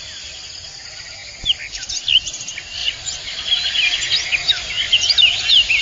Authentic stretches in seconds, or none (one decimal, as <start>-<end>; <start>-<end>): 0.0-5.8